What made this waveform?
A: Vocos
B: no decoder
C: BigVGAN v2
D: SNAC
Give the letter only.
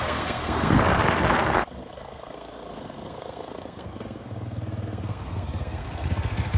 D